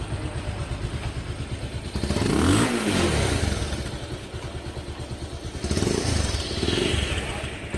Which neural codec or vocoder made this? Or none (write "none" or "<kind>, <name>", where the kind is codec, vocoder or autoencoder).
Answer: none